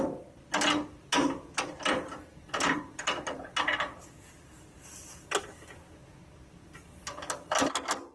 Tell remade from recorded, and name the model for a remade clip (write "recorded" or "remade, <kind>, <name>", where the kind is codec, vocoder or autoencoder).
recorded